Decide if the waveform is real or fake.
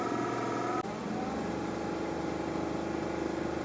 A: real